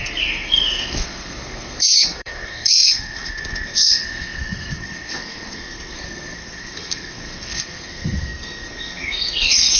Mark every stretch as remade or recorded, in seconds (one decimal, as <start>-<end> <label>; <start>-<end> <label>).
0.0-9.8 remade